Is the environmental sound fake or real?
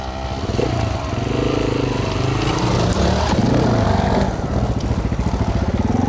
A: real